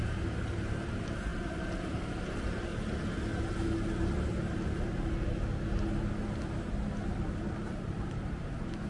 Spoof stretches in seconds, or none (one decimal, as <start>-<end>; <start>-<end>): 0.0-2.7; 7.4-8.9